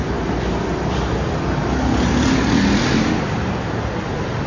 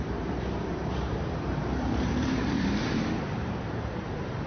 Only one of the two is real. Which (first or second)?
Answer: first